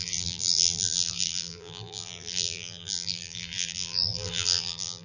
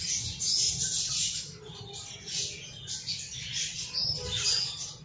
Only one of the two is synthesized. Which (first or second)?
first